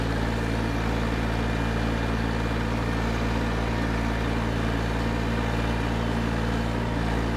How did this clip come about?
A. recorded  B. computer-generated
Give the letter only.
A